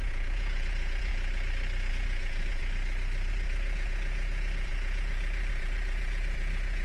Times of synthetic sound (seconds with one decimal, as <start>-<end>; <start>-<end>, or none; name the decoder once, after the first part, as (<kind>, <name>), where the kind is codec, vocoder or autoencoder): 0.0-1.1 (vocoder, Vocos); 1.9-2.6; 3.3-6.8